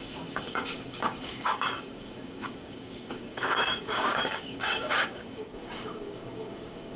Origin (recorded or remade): remade